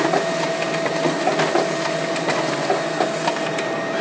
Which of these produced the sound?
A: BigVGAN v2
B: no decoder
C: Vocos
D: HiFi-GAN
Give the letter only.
B